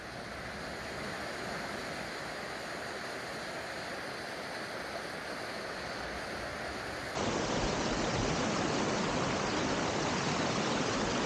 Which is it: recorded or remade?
recorded